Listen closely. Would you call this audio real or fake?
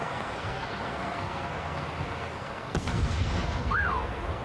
fake